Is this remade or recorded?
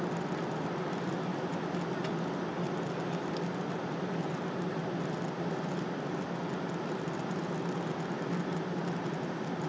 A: recorded